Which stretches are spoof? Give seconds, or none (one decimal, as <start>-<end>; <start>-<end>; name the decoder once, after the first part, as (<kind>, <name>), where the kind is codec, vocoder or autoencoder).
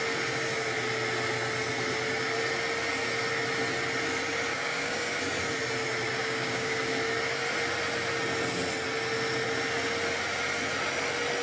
4.5-5.2 (codec, DAC); 6.2-6.8